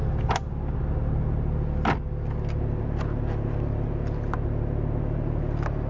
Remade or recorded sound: recorded